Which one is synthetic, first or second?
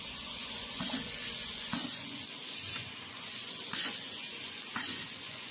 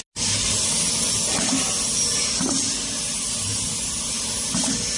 first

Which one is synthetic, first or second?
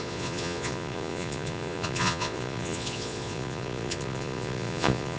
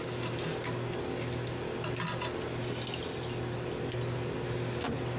first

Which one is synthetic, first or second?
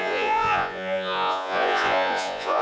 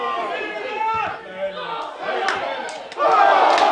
first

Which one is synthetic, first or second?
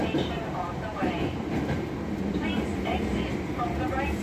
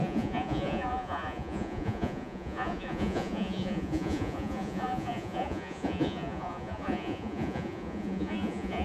second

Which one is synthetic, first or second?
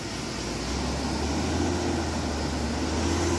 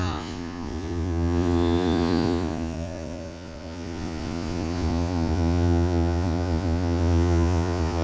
second